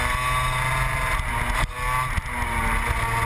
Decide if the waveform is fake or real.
real